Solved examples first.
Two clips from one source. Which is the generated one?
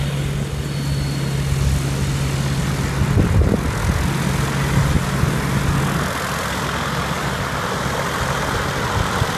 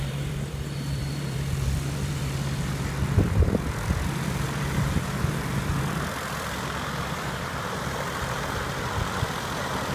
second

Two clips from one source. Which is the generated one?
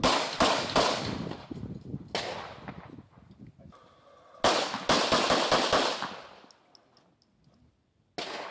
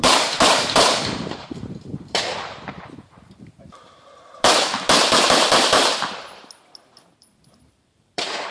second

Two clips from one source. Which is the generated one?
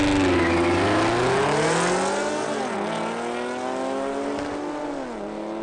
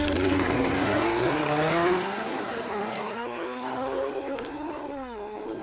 second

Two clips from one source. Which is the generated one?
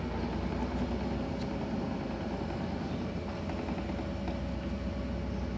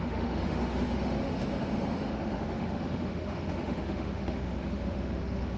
second